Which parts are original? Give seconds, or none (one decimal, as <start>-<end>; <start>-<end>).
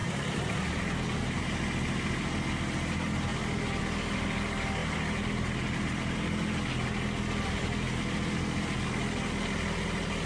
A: 0.0-10.3